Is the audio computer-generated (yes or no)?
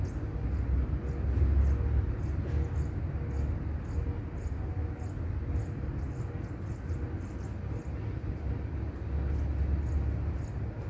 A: no